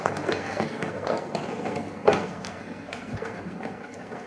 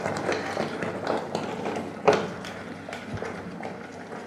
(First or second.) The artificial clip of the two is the first